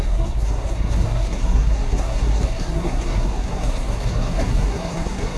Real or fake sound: fake